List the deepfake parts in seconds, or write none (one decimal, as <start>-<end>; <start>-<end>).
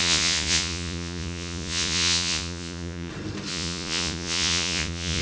0.0-3.1; 3.5-5.2